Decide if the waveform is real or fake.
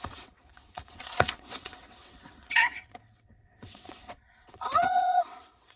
fake